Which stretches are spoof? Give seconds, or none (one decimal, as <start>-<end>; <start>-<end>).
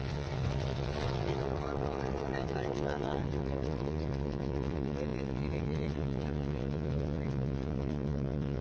0.0-8.6